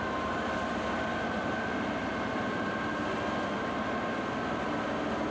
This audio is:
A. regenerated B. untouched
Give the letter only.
B